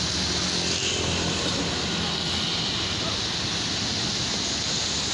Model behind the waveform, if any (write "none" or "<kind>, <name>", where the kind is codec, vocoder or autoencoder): none